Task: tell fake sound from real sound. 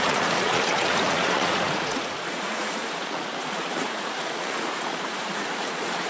fake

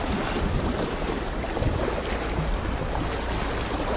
real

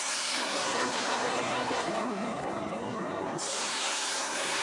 fake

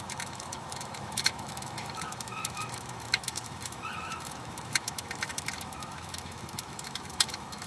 fake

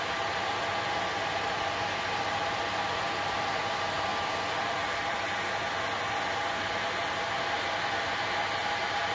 real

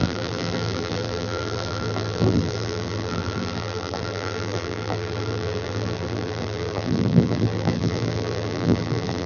fake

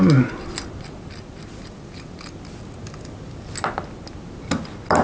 real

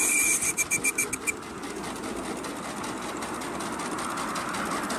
real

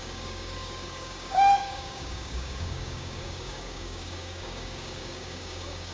fake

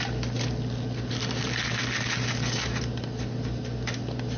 real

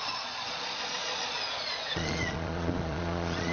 fake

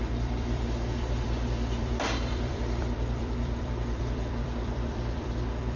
fake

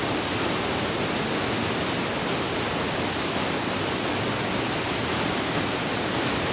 real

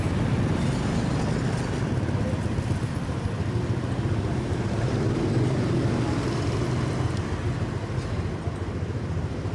real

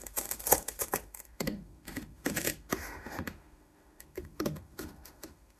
fake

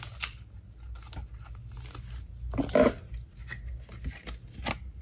real